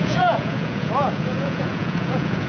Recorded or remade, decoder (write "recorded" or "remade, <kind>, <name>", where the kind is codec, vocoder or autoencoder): remade, vocoder, Vocos